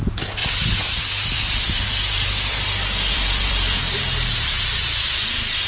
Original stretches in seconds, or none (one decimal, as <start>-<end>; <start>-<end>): 0.0-0.4; 3.8-4.8